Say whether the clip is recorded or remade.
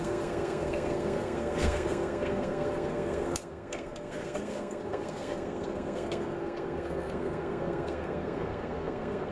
remade